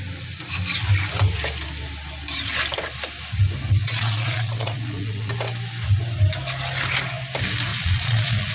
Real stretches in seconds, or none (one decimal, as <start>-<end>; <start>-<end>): 0.0-3.8; 5.3-7.7